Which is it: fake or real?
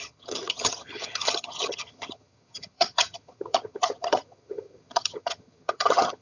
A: fake